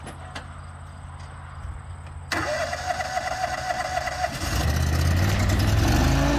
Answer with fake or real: real